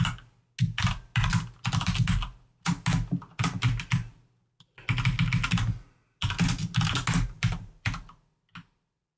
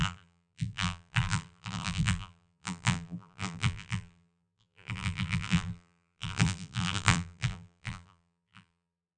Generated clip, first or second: second